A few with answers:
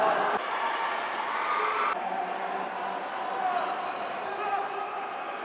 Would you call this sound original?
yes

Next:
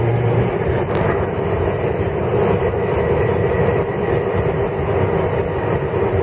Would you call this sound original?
yes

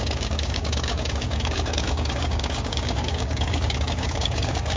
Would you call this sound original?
no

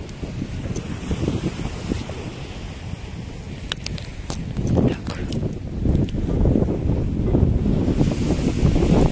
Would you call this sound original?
yes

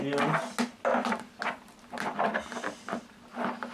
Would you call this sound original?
yes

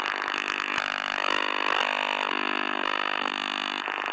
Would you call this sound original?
yes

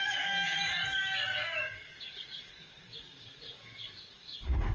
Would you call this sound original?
no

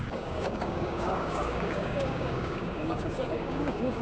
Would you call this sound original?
no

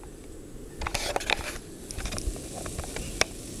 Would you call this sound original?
yes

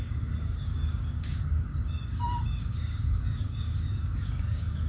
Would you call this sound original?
no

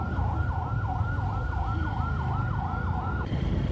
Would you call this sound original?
yes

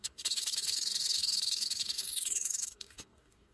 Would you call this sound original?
no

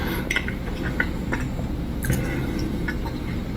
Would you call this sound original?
yes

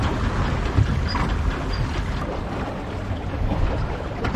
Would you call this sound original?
yes